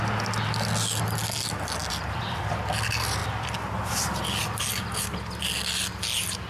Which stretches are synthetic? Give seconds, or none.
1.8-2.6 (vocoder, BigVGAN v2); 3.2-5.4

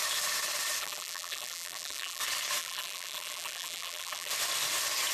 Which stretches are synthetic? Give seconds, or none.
0.8-2.2 (vocoder, BigVGAN v2); 2.6-4.3

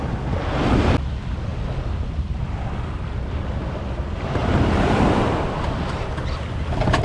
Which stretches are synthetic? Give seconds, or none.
4.4-7.0 (vocoder, BigVGAN v2)

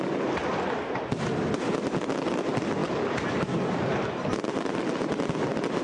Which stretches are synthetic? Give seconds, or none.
none

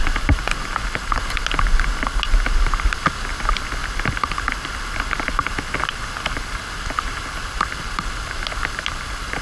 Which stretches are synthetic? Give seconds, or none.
3.8-8.0 (vocoder, BigVGAN v2)